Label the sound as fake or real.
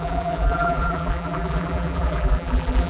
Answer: fake